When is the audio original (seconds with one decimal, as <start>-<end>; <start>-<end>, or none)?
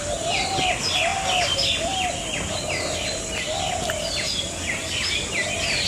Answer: 0.0-5.9